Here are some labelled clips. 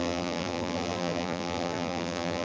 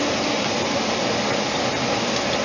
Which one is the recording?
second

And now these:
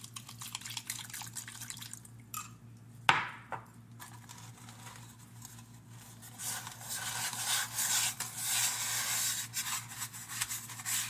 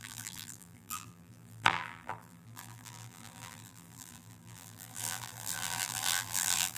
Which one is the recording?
first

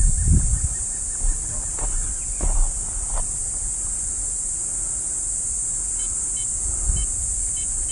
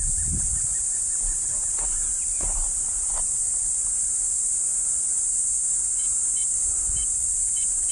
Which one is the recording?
first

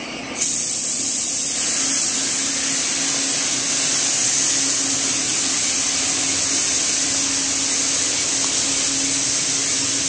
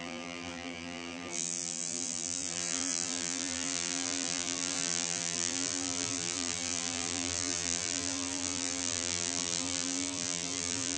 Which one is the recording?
first